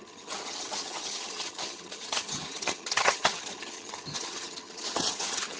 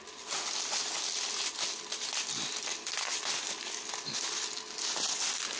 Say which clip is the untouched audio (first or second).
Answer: second